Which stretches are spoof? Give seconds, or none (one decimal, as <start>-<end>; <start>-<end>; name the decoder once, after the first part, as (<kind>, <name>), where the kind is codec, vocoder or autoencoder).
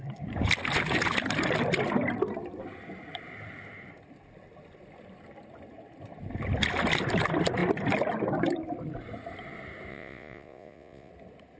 9.9-11.1 (vocoder, Vocos)